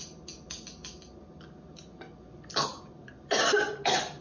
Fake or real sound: real